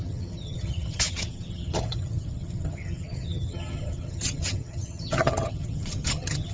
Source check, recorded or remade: remade